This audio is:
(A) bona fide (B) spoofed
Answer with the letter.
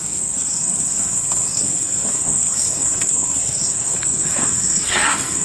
B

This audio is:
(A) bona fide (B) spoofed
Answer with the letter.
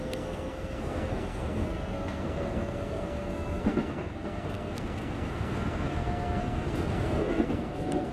B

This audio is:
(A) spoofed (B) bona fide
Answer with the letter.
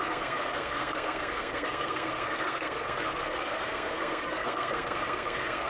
A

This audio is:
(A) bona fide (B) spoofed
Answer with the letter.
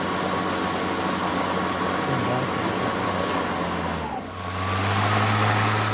A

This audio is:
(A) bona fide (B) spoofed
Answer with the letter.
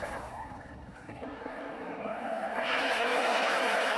B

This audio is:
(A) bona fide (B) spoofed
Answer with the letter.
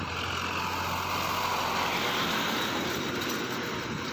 A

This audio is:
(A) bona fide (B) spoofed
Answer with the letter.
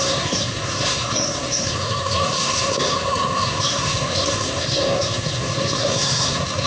B